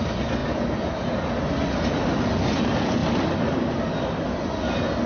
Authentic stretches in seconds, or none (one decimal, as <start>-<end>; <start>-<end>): 0.0-5.1